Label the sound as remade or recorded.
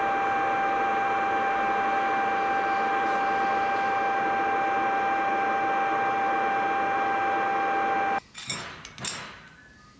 recorded